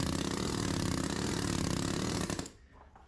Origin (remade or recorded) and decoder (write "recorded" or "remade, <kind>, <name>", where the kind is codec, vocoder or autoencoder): recorded